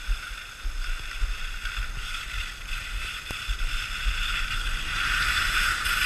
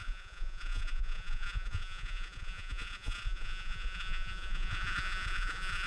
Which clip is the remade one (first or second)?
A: second